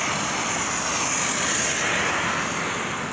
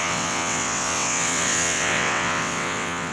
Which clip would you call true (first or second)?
first